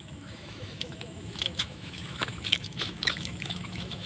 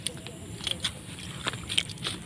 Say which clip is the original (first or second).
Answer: second